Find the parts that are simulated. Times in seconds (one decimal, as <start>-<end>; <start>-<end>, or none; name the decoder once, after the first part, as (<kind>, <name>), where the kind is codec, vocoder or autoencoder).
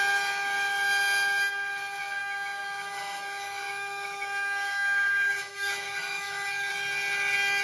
2.2-6.7 (autoencoder, DAC-VAE)